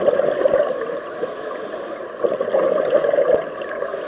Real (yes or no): yes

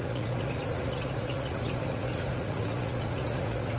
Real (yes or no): no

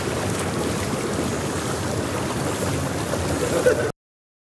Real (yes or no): yes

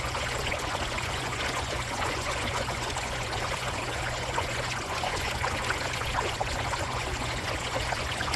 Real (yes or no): no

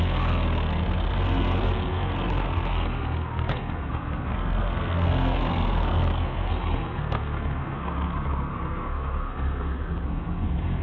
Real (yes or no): no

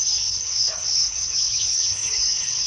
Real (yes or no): no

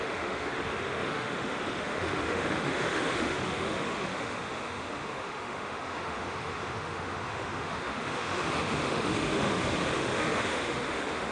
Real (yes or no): no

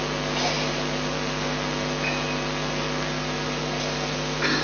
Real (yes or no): yes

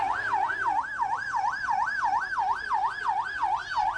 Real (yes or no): yes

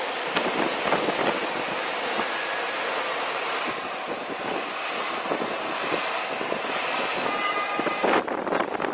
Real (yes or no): yes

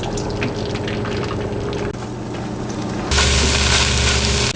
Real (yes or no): yes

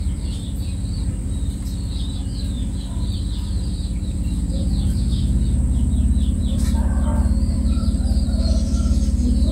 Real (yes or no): no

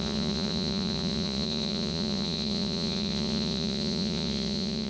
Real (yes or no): no